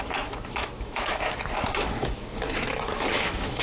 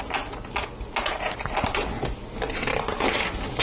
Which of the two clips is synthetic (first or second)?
first